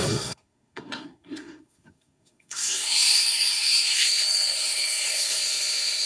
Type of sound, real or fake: fake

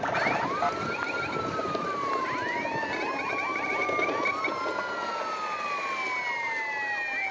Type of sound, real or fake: real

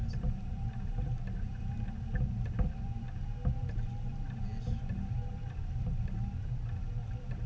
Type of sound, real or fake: real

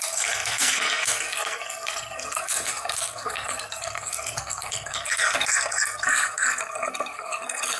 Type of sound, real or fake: fake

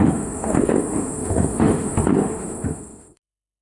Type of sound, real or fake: fake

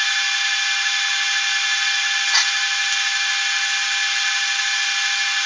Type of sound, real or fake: real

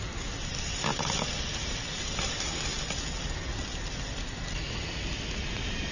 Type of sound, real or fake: real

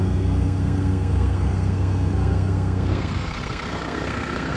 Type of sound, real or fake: fake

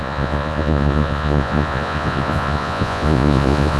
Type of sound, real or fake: fake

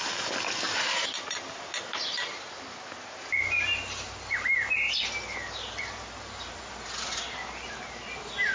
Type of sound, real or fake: real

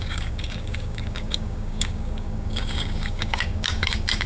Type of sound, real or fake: fake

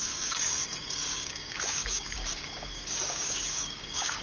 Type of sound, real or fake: fake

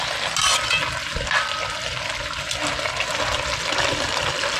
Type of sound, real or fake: real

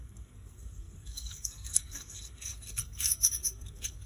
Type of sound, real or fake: fake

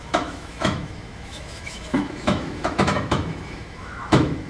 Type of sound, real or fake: fake